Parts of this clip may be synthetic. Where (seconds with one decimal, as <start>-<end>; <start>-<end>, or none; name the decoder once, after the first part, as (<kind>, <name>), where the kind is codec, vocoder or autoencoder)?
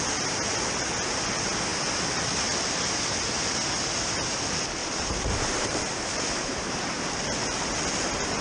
4.8-6.7 (vocoder, BigVGAN v2)